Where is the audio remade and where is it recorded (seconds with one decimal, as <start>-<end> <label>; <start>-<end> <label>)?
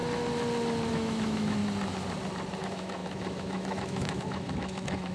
0.0-0.9 recorded; 0.9-1.6 remade; 1.6-2.6 recorded; 2.6-5.1 remade